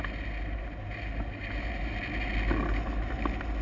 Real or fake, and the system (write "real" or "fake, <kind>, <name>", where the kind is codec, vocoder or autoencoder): real